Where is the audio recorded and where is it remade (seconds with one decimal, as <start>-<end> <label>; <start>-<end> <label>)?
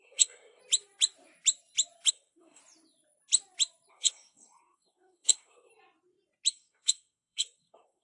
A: 0.0-0.6 remade; 0.6-2.1 recorded; 2.1-2.6 remade; 2.6-3.9 recorded; 3.9-5.7 remade; 5.7-6.5 recorded; 6.5-8.0 remade